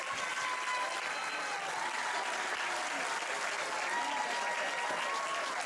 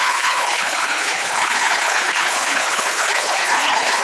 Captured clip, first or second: first